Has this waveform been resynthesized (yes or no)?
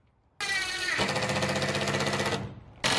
no